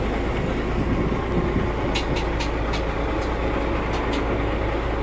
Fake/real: real